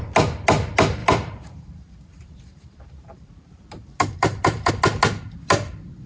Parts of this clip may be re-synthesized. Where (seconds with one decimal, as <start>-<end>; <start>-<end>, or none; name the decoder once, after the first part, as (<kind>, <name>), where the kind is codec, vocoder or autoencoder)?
1.0-4.7 (vocoder, BigVGAN v2)